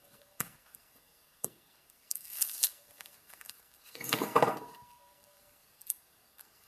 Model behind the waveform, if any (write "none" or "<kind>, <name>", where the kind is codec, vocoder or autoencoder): codec, SNAC